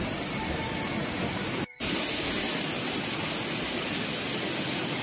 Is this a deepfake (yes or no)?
no